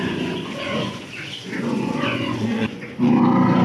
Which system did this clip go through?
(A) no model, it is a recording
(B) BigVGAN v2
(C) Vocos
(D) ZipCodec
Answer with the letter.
C